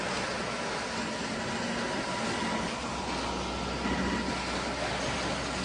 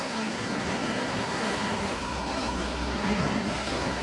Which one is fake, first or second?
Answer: second